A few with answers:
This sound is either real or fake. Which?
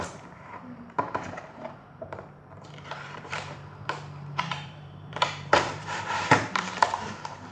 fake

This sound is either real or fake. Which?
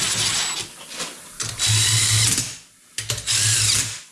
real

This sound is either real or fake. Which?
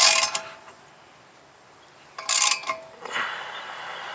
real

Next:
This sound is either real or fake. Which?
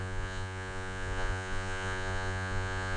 fake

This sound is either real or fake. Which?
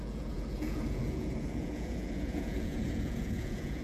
fake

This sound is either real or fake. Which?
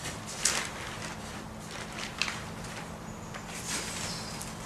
real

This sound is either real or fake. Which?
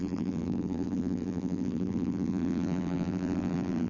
fake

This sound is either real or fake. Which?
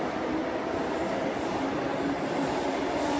real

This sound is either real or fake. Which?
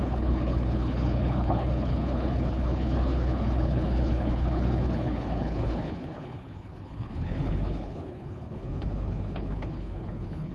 fake